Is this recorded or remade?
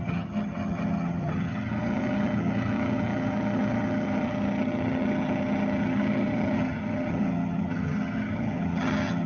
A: remade